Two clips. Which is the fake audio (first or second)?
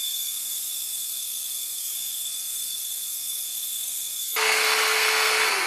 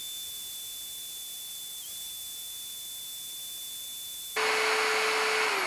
first